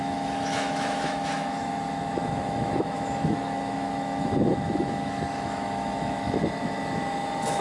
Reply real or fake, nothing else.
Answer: fake